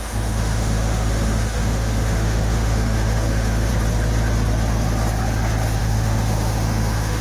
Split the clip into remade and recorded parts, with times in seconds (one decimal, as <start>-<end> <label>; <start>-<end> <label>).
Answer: 0.0-3.7 remade; 3.7-5.8 recorded; 5.8-7.2 remade